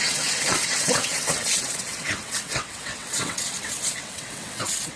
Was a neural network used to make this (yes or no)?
yes